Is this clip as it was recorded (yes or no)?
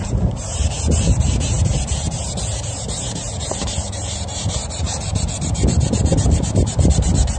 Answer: no